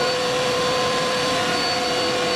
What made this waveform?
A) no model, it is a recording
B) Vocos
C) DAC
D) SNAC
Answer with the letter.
A